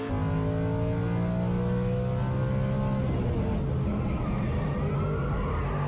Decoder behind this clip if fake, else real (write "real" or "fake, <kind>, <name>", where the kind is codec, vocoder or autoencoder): real